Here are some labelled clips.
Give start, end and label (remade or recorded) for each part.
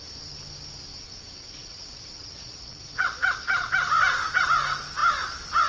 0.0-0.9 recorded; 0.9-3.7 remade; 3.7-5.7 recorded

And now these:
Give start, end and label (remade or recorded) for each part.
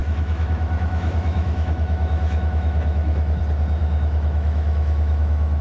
0.0-3.4 remade; 3.4-3.8 recorded; 3.8-5.6 remade